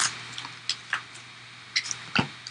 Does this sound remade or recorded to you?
recorded